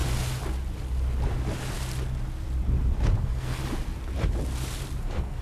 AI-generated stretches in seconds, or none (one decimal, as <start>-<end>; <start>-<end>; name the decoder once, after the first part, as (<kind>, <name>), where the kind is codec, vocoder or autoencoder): 3.2-3.6 (codec, SNAC); 5.0-5.4